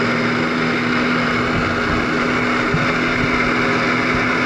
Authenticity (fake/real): real